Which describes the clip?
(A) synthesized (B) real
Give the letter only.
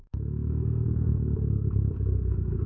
A